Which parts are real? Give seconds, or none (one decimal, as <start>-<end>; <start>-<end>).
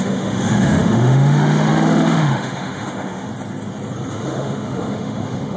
3.3-4.1